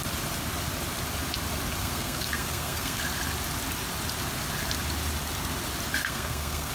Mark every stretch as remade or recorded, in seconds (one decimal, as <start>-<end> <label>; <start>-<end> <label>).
0.0-1.8 recorded; 1.8-3.0 remade; 3.0-6.0 recorded; 6.0-6.7 remade